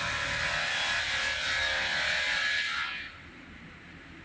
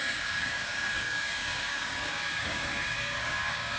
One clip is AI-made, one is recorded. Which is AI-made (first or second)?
second